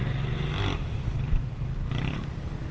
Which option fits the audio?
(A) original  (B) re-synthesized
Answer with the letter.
A